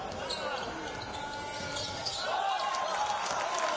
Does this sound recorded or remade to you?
recorded